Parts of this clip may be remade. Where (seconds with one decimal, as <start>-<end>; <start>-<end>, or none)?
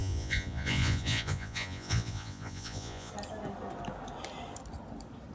0.0-3.1